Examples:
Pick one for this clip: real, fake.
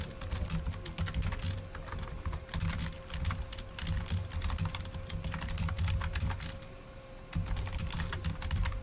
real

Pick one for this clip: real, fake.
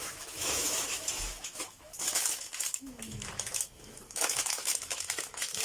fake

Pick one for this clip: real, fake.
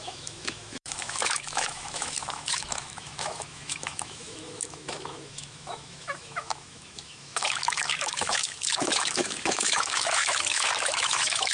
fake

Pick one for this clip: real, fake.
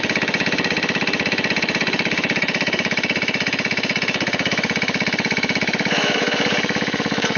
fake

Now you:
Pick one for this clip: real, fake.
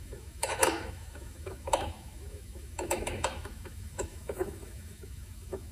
fake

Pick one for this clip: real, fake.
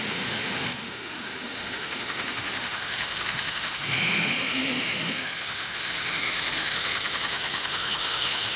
fake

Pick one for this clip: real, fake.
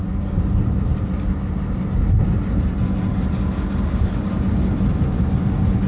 real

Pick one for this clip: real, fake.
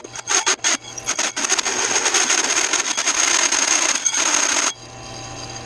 real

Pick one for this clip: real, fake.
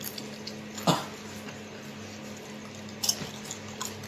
real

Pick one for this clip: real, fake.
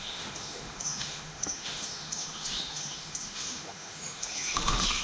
fake